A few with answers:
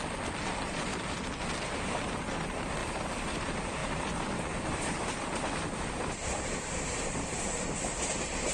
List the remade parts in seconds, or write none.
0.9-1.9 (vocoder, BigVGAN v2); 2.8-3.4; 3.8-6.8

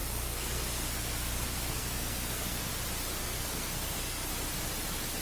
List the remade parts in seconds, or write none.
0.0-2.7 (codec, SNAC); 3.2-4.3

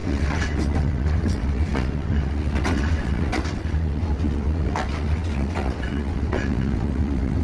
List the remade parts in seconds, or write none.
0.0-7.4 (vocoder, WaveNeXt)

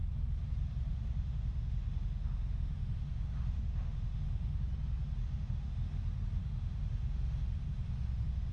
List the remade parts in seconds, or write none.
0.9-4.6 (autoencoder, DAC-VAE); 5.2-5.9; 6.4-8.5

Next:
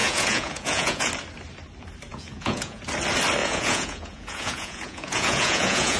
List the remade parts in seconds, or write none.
0.0-1.1 (vocoder, Vocos); 2.1-2.8; 3.4-6.0